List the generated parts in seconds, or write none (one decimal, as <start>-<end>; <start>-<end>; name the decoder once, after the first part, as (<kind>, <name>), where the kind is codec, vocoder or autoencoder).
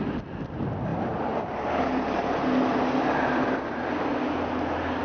0.9-2.2 (vocoder, BigVGAN v2)